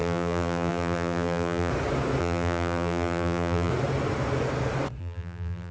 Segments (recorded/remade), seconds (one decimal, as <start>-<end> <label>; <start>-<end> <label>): 0.0-1.7 remade; 1.7-2.2 recorded; 2.2-3.7 remade; 3.7-5.0 recorded; 5.0-5.7 remade